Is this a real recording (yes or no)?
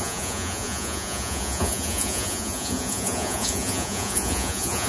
no